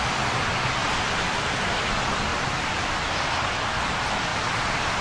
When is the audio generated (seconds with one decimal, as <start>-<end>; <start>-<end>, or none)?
none